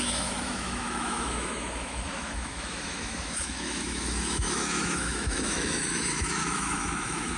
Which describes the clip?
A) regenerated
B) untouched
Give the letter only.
A